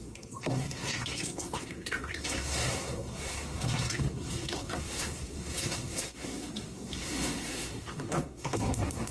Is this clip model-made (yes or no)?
yes